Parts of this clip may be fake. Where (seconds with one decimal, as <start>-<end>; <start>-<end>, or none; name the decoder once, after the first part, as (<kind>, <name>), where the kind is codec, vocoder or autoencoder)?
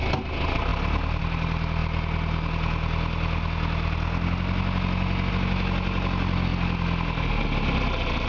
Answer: none